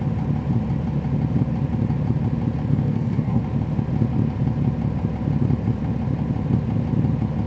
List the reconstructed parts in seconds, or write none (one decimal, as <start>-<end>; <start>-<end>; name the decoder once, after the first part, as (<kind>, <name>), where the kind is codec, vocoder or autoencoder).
2.7-3.4 (codec, SNAC)